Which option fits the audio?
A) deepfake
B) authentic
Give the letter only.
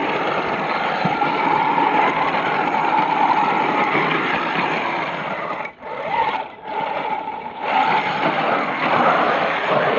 B